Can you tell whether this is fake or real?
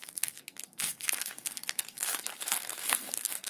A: fake